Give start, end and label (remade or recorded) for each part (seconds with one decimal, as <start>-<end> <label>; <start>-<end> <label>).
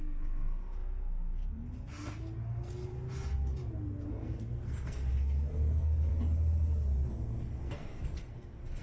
0.0-2.9 remade; 2.9-4.1 recorded; 4.1-6.1 remade; 6.1-7.1 recorded; 7.1-8.8 remade